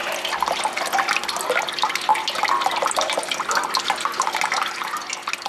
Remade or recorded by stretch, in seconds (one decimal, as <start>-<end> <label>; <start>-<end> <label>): 0.0-5.5 recorded